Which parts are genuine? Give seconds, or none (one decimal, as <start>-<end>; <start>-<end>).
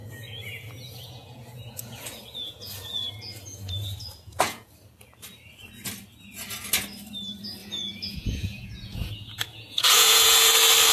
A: 4.7-7.6; 10.5-10.9